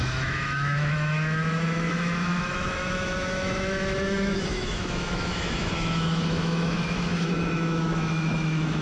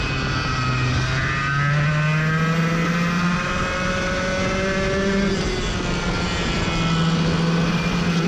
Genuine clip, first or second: second